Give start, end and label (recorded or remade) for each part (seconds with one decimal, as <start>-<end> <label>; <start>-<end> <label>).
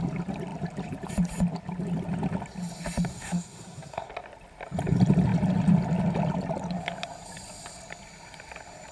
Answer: 0.0-3.1 recorded; 3.1-4.1 remade; 4.1-8.9 recorded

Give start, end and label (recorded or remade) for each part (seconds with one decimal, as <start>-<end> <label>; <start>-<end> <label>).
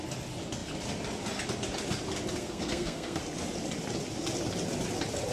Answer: 0.0-2.4 recorded; 2.4-3.2 remade; 3.2-5.3 recorded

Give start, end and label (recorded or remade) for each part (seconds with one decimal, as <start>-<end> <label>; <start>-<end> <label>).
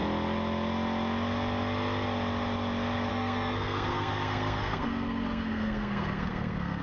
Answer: 0.0-3.1 recorded; 3.1-6.8 remade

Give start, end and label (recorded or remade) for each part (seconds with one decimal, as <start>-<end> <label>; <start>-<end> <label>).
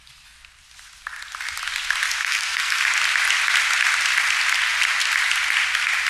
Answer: 0.0-2.2 recorded; 2.2-2.8 remade; 2.8-6.1 recorded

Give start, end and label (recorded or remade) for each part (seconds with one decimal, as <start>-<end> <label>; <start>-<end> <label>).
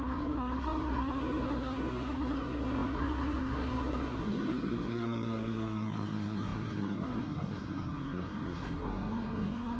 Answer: 0.0-9.8 remade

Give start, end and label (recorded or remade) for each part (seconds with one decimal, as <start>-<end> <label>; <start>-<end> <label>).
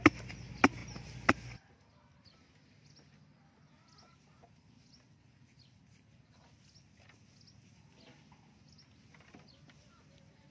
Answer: 0.0-10.5 recorded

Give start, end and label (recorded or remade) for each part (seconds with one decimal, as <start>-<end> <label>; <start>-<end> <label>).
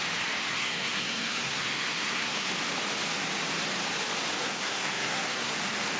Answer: 0.0-0.5 recorded; 0.5-2.5 remade; 2.5-4.4 recorded; 4.4-5.5 remade; 5.5-6.0 recorded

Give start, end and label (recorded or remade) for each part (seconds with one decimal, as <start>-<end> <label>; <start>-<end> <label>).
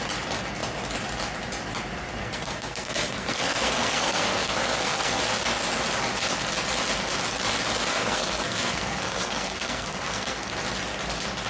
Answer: 0.0-2.2 recorded; 2.2-5.2 remade; 5.2-8.0 recorded; 8.0-10.5 remade; 10.5-11.5 recorded